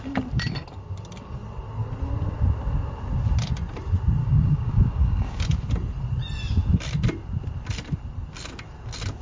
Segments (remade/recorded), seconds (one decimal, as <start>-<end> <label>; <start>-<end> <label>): 0.0-4.2 recorded; 4.2-5.4 remade; 5.4-9.2 recorded